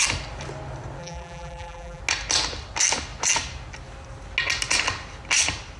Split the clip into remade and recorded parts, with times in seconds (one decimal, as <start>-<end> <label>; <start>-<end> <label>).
0.0-1.0 recorded; 1.0-2.0 remade; 2.0-5.8 recorded